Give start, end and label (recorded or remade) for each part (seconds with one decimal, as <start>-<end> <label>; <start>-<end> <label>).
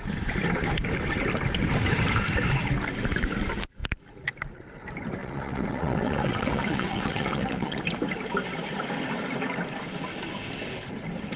0.0-5.2 recorded; 5.2-7.8 remade; 7.8-11.4 recorded